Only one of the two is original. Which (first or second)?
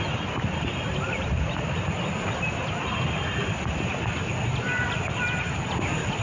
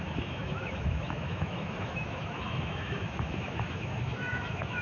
first